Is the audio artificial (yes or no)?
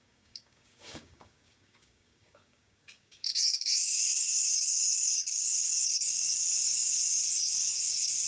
yes